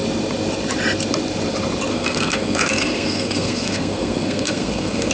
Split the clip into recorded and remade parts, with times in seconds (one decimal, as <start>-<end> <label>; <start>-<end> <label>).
0.0-1.9 recorded; 1.9-5.1 remade